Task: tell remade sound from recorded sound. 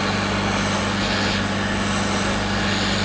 recorded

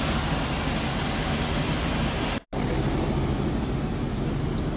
recorded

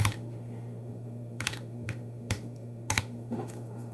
remade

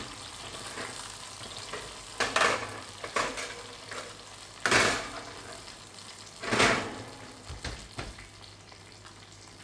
recorded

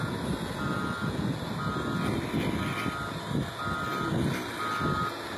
recorded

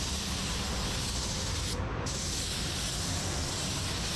recorded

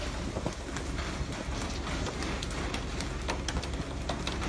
recorded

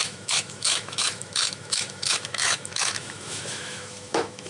remade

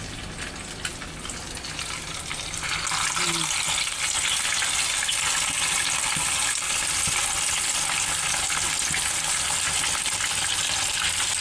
recorded